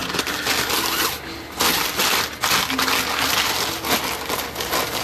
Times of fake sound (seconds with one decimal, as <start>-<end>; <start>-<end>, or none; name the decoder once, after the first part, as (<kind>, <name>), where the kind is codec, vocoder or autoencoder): none

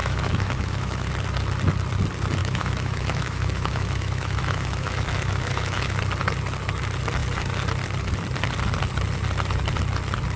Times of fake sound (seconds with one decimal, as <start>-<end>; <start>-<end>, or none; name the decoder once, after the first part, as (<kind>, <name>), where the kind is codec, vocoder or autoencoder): 0.0-1.1 (autoencoder, DAC-VAE); 2.4-6.0